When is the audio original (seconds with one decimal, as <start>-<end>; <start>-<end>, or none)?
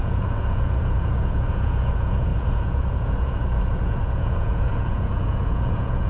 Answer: none